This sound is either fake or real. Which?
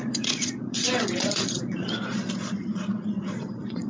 fake